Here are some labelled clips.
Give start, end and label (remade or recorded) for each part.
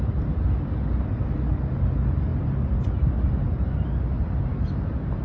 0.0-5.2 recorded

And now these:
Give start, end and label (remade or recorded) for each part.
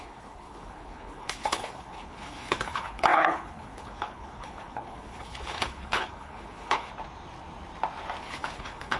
0.0-6.9 remade; 6.9-8.2 recorded; 8.2-9.0 remade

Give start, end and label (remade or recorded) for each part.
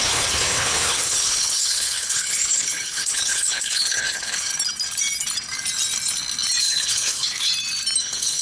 0.0-4.5 remade; 4.5-6.6 recorded; 6.6-7.5 remade; 7.5-8.0 recorded; 8.0-8.4 remade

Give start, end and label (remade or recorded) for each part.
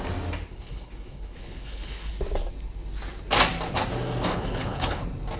0.0-0.5 recorded; 0.5-2.1 remade; 2.1-4.3 recorded; 4.3-5.0 remade; 5.0-5.4 recorded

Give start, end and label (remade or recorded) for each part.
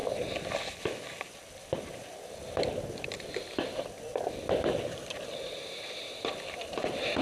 0.0-7.2 recorded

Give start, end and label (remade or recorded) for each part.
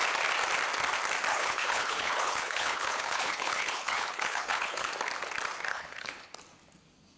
0.0-1.3 recorded; 1.3-4.9 remade; 4.9-5.7 recorded; 5.7-6.3 remade; 6.3-7.2 recorded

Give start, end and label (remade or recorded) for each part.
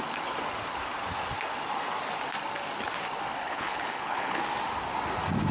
0.0-3.4 recorded; 3.4-4.4 remade; 4.4-5.5 recorded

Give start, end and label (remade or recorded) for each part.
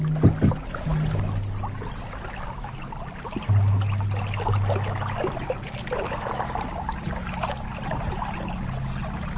0.0-9.4 recorded